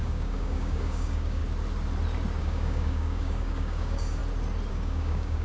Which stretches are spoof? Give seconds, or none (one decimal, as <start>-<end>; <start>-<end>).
0.0-1.4; 2.4-4.2; 4.7-5.4